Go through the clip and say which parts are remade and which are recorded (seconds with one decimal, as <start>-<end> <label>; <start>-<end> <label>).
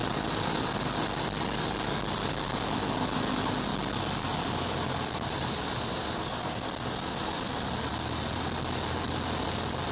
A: 0.0-9.9 recorded